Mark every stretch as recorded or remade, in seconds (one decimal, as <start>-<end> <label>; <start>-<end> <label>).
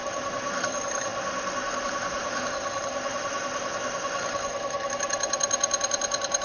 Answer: 0.0-1.1 remade; 1.1-1.8 recorded; 1.8-6.4 remade